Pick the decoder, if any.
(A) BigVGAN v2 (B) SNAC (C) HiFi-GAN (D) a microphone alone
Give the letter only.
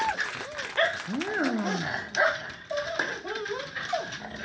D